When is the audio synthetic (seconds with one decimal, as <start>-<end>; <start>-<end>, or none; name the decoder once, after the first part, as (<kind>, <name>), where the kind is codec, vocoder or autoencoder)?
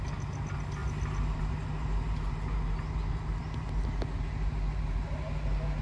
none